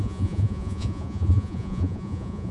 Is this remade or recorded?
remade